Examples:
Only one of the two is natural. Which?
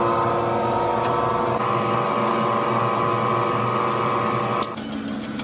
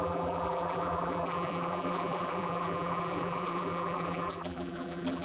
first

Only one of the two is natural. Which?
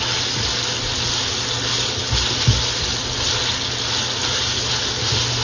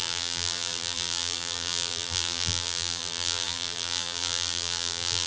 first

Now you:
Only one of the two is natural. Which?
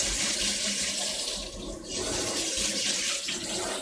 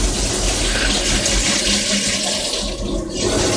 second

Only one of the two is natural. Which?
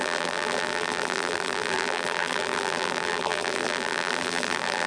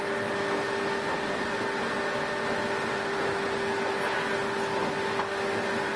second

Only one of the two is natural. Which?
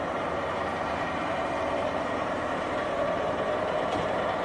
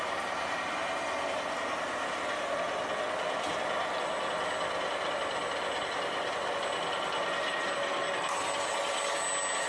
second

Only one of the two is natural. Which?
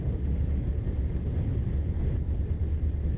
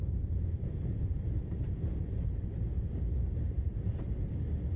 first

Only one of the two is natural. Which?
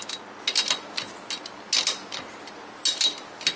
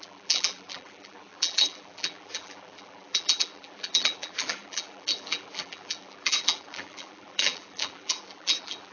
first